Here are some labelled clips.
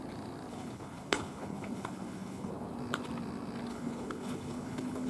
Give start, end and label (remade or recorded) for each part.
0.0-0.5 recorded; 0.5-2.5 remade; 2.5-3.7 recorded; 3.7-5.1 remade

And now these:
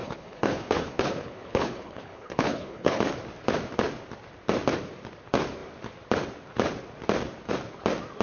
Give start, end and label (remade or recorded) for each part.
0.0-3.0 remade; 3.0-8.2 recorded

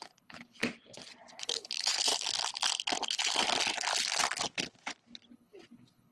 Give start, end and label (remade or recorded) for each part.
0.0-0.6 remade; 0.6-1.3 recorded; 1.3-2.1 remade; 2.1-5.3 recorded; 5.3-6.1 remade

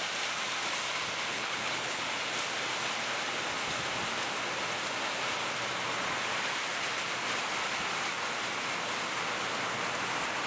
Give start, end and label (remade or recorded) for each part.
0.0-1.3 recorded; 1.3-2.0 remade; 2.0-10.5 recorded

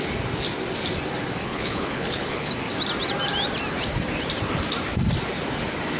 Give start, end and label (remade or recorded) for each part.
0.0-1.4 recorded; 1.4-2.5 remade; 2.5-6.0 recorded